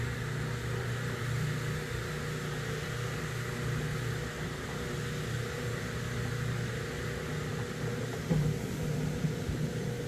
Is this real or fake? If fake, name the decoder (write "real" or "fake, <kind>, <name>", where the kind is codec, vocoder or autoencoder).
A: real